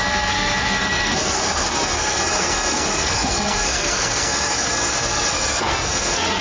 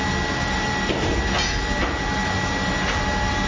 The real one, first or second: second